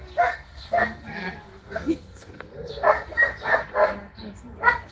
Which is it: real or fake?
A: fake